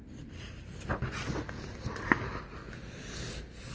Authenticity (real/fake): real